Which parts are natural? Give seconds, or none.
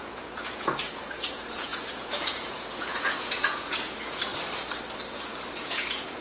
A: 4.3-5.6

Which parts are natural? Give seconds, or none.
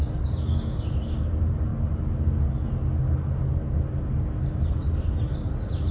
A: 0.0-5.9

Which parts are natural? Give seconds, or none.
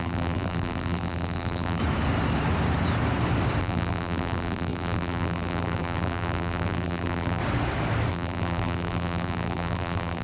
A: 1.8-3.6; 7.4-8.1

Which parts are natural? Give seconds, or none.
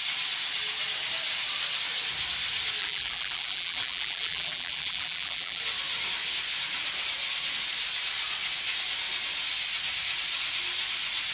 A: 0.0-2.8; 5.6-11.3